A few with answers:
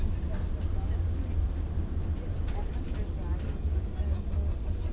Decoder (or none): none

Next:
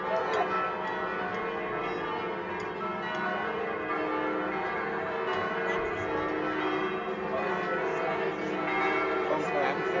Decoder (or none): none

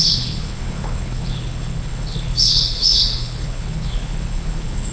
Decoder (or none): codec, HILCodec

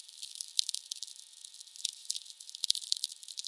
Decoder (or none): vocoder, BigVGAN v2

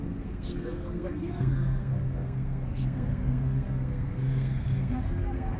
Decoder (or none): codec, SNAC